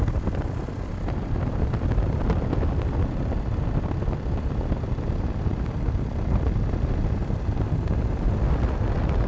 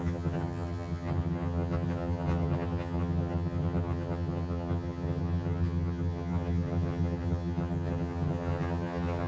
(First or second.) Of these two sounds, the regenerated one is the second